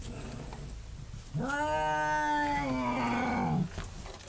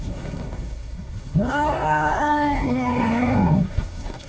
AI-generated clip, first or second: second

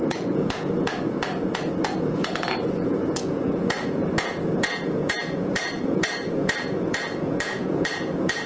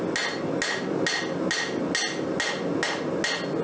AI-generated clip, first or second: first